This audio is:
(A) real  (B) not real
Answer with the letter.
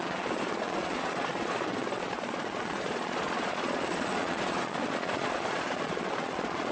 B